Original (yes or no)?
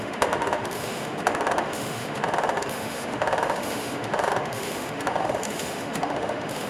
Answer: no